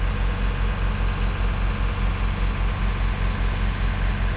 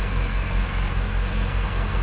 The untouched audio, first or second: first